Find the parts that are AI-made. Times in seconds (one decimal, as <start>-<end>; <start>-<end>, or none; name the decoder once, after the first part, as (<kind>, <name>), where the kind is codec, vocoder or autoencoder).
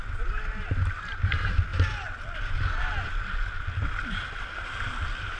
none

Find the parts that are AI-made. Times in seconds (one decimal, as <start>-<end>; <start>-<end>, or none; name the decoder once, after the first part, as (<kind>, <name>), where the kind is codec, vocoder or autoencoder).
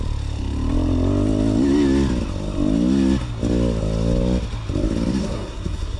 5.2-6.0 (codec, SNAC)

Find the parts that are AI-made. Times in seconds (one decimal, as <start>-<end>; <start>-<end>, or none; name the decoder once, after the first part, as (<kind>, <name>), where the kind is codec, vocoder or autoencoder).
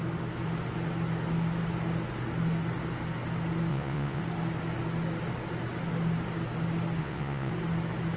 3.7-4.2 (vocoder, Vocos); 7.0-7.5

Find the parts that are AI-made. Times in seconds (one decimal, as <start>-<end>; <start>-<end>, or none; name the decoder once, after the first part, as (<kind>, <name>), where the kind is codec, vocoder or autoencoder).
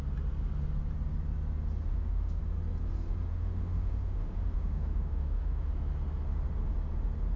1.9-2.4 (autoencoder, DAC-VAE); 3.3-5.7